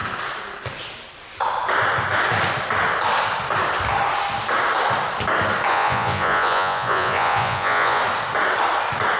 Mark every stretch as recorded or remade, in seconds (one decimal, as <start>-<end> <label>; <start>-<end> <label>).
0.0-5.7 recorded; 5.7-8.0 remade; 8.0-9.2 recorded